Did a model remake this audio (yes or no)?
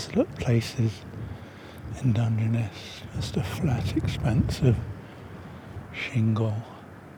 no